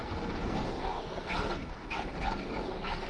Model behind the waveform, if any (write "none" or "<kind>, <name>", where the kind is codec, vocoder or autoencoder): codec, SNAC